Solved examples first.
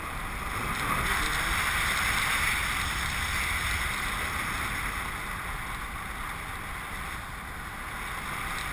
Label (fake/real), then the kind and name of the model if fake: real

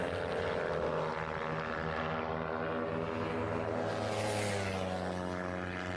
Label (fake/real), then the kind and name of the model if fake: real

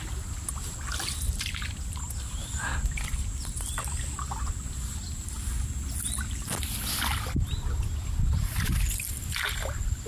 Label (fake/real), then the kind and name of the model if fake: real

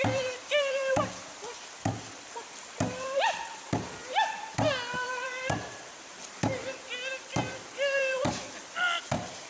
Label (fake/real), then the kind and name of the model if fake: fake, vocoder, BigVGAN v2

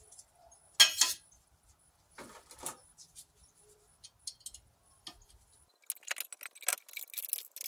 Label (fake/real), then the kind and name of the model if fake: real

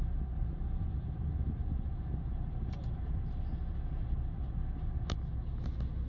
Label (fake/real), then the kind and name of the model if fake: real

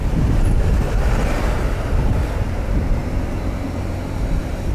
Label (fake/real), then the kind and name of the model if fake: fake, vocoder, BigVGAN v2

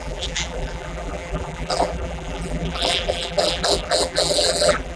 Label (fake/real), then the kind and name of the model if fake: fake, vocoder, BigVGAN v2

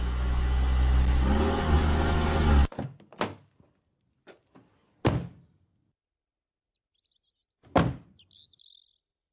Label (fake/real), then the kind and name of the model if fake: real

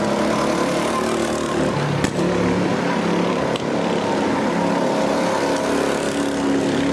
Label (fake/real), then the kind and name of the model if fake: real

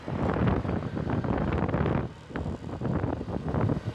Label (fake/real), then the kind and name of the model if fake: real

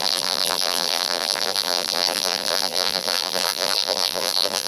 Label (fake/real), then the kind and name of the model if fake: fake, vocoder, BigVGAN v2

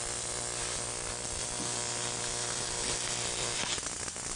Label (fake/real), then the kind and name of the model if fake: fake, vocoder, BigVGAN v2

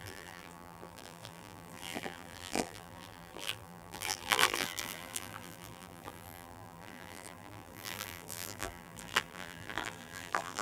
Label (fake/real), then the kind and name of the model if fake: fake, vocoder, BigVGAN v2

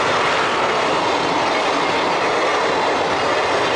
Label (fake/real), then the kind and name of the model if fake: real